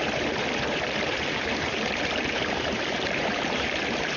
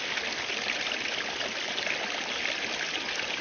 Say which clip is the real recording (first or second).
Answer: second